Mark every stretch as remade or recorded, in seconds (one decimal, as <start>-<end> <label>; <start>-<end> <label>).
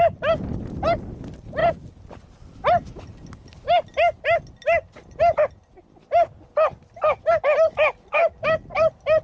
0.0-9.2 recorded